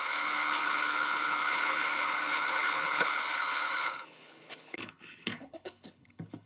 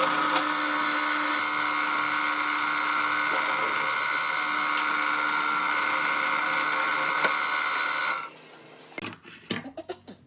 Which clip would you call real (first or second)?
second